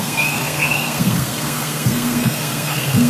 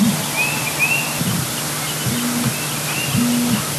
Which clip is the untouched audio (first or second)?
second